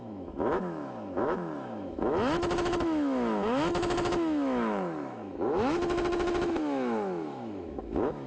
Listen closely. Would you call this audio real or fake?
fake